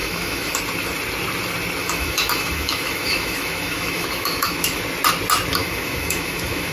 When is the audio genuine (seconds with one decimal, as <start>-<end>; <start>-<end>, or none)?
0.6-1.8; 4.8-5.6